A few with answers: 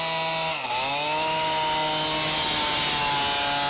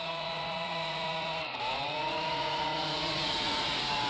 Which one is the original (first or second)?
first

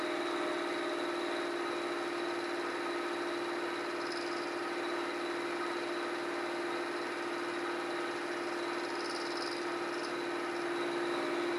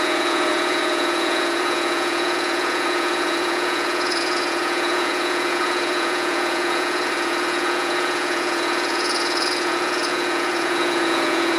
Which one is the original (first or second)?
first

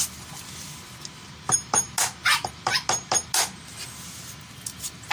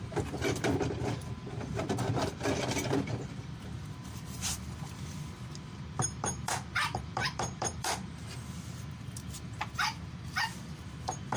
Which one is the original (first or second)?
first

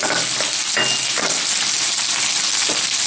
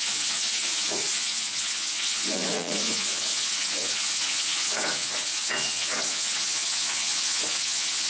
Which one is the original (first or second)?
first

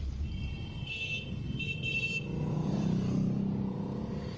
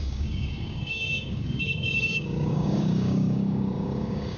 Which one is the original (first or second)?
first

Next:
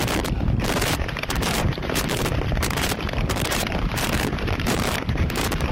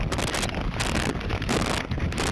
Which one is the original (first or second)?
second